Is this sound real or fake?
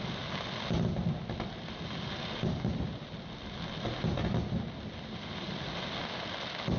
real